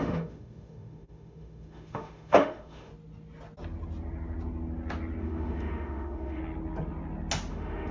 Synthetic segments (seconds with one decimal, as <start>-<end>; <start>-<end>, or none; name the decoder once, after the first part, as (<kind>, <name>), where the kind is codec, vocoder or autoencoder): 0.0-2.9 (autoencoder, DAC-VAE); 5.2-6.4; 7.5-7.9